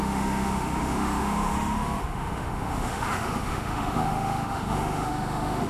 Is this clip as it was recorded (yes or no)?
no